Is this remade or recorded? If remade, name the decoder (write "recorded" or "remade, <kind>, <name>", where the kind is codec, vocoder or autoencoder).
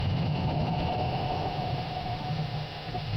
remade, autoencoder, DAC-VAE